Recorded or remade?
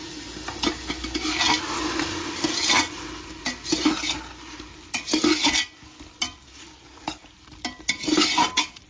recorded